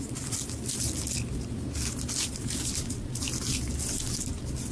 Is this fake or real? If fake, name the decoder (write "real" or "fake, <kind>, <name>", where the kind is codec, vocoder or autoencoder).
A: real